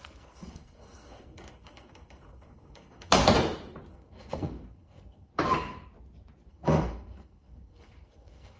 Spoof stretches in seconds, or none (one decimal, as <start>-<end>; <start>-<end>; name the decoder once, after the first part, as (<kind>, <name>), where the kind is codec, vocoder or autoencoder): 0.0-3.2 (codec, SNAC); 3.9-5.3; 6.5-8.6